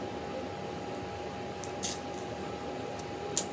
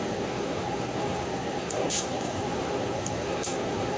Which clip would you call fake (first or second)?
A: second